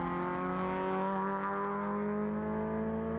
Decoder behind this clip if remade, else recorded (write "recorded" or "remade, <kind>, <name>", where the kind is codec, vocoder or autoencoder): recorded